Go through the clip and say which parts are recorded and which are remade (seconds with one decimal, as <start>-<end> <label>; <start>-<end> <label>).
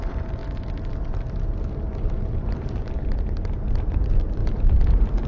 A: 0.0-0.4 remade; 0.4-1.6 recorded; 1.6-4.4 remade; 4.4-5.3 recorded